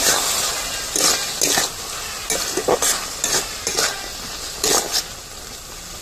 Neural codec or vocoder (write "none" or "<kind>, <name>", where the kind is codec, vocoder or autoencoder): none